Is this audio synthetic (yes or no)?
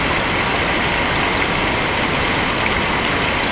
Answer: no